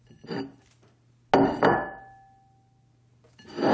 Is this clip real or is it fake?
real